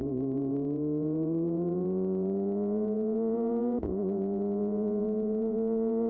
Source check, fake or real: fake